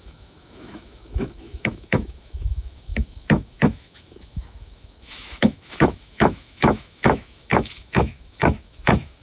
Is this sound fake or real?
fake